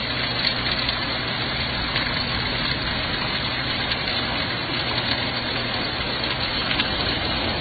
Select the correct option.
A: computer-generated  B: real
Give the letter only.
A